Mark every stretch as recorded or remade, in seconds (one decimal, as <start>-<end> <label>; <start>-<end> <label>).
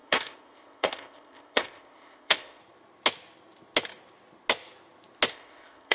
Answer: 0.0-2.6 remade; 2.6-5.3 recorded; 5.3-5.9 remade